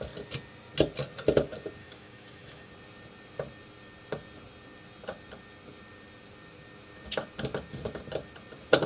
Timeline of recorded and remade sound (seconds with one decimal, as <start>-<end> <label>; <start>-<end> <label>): 0.0-1.8 recorded; 1.8-2.7 remade; 2.7-8.9 recorded